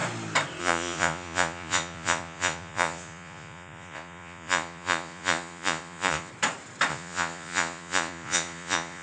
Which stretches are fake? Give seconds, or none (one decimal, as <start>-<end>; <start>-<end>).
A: 0.6-6.3; 6.9-9.0

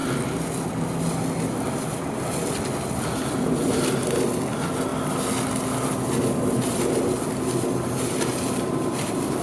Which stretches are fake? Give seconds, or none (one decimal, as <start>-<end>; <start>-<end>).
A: none

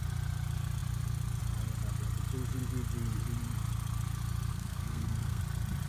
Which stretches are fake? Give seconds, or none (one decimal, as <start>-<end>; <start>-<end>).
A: 4.5-5.4